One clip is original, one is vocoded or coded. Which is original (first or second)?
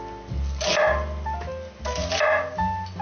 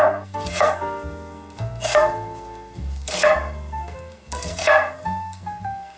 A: first